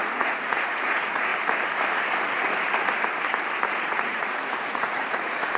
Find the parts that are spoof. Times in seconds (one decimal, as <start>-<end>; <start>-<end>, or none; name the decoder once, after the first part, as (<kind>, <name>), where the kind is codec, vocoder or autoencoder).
0.0-1.3 (vocoder, Vocos); 3.9-5.6